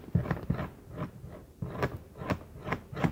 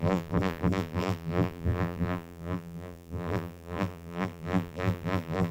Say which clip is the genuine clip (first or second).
first